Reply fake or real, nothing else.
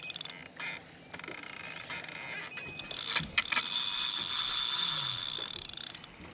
real